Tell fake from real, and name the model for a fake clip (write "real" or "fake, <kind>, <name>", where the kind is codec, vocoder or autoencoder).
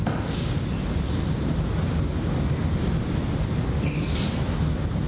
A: real